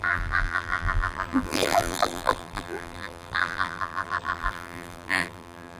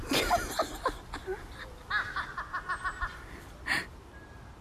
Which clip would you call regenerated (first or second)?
first